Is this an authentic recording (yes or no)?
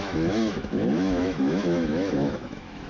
no